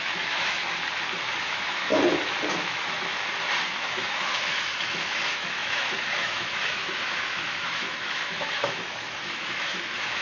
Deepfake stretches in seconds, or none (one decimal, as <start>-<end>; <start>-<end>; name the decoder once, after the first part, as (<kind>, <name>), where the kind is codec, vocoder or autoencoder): 0.0-0.6 (autoencoder, DAC-VAE); 1.3-1.9; 2.5-3.2; 3.7-10.2